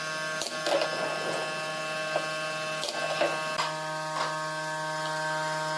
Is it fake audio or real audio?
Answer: real